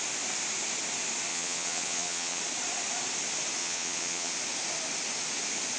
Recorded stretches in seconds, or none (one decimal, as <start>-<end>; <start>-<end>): 0.0-1.3; 2.4-3.6; 4.3-5.8